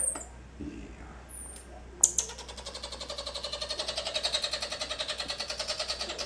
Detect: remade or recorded recorded